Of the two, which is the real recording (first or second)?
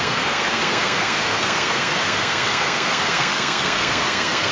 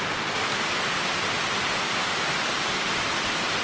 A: second